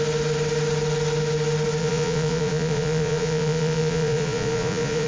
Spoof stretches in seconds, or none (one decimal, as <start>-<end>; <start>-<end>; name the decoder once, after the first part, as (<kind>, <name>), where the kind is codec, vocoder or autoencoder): 1.8-5.1 (vocoder, Vocos)

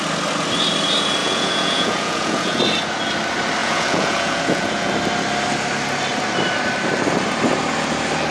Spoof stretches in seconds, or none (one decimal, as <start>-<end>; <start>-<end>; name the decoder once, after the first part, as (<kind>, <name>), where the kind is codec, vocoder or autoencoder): 1.2-2.6 (vocoder, Vocos); 3.6-4.9

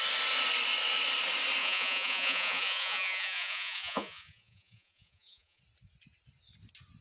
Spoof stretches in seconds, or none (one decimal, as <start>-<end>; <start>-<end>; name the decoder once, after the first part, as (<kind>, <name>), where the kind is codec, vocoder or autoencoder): 1.6-5.6 (vocoder, Vocos)

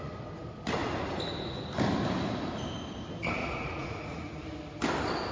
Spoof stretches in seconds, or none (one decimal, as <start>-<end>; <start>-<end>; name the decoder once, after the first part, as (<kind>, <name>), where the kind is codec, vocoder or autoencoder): 3.4-4.3 (vocoder, Vocos)

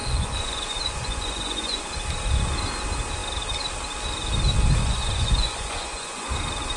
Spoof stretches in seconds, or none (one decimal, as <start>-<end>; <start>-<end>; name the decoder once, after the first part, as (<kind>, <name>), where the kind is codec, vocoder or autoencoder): 0.0-1.9 (vocoder, Vocos); 4.8-6.3

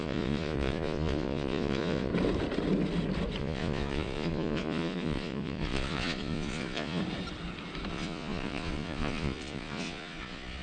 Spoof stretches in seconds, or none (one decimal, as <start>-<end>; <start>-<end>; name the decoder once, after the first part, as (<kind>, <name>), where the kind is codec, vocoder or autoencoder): 0.0-2.1 (vocoder, Vocos); 3.4-7.0; 7.9-10.6

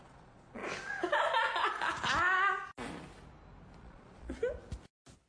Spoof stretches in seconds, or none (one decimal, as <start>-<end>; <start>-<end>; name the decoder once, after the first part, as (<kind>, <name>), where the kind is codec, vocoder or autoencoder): 0.0-0.6 (vocoder, Vocos); 3.8-4.4

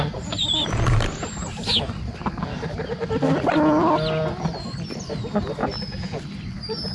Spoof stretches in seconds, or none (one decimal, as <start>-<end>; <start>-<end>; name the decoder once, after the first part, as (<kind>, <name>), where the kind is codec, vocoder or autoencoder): 5.6-6.2 (vocoder, Vocos)